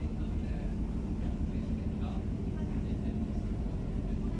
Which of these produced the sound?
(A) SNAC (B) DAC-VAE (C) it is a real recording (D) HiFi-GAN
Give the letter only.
C